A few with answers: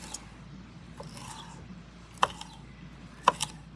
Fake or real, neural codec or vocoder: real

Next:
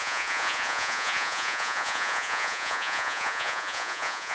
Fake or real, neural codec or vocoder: fake, vocoder, Vocos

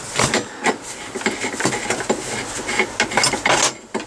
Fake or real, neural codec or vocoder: real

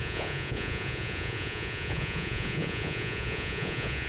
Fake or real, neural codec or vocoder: fake, vocoder, Vocos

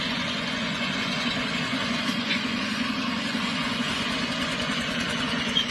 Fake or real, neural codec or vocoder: fake, vocoder, Vocos